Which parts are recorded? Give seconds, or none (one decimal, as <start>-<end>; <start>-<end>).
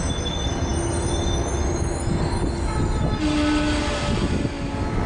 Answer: 0.0-5.1